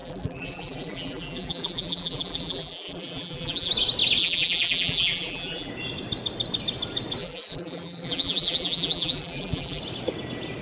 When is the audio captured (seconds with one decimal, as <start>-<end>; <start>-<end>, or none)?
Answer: 3.7-4.2; 5.7-7.2; 9.8-10.6